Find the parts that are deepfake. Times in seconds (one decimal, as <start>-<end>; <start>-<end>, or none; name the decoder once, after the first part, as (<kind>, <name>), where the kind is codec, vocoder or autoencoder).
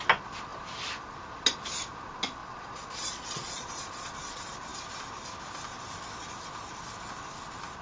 2.4-4.1 (vocoder, Vocos)